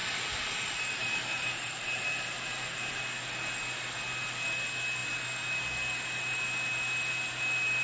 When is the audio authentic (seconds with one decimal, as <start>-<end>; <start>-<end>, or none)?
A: 3.0-7.8

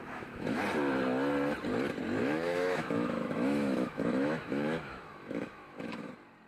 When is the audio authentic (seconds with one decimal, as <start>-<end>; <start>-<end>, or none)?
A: 0.6-2.2; 6.1-6.5